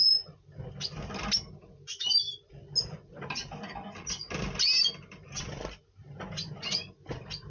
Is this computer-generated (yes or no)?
no